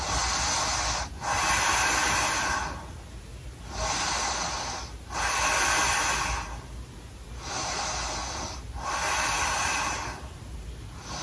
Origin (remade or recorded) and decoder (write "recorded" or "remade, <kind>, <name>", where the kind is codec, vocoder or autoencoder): recorded